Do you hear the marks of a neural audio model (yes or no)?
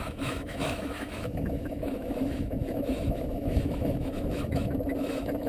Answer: yes